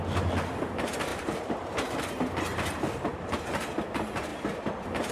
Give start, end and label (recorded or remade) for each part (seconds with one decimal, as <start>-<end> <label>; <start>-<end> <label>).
0.0-1.1 recorded; 1.1-2.0 remade; 2.0-3.1 recorded; 3.1-3.6 remade; 3.6-5.1 recorded